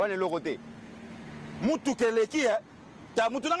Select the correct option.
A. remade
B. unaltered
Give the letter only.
B